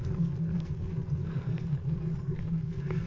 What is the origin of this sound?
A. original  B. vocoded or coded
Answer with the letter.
B